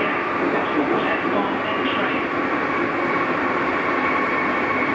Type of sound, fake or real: real